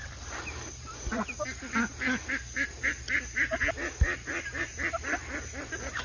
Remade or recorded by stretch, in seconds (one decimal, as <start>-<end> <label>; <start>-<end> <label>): 0.0-6.0 recorded